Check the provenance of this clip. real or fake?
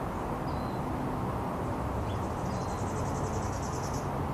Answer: real